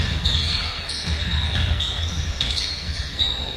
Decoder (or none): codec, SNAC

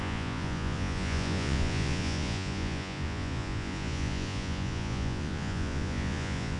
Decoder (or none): vocoder, Vocos